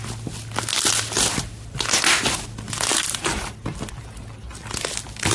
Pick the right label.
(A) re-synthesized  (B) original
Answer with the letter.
B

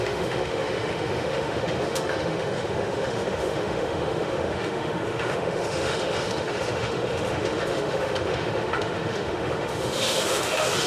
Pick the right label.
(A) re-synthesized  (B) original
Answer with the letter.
A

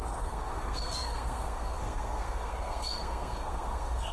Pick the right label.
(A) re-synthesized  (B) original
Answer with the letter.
A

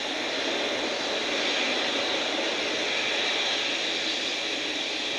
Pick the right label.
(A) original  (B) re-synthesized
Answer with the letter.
A